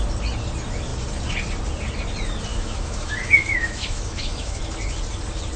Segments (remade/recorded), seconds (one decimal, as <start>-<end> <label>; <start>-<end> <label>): 0.0-2.5 recorded; 2.5-4.6 remade; 4.6-5.6 recorded